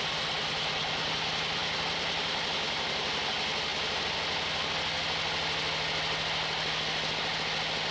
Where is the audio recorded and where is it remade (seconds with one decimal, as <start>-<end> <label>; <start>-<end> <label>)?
0.0-7.9 recorded